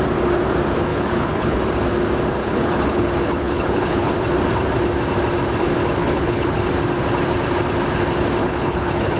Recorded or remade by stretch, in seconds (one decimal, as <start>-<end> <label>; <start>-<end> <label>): 0.0-0.9 recorded; 0.9-1.6 remade; 1.6-2.4 recorded; 2.4-4.1 remade; 4.1-6.0 recorded; 6.0-6.6 remade; 6.6-8.4 recorded; 8.4-9.2 remade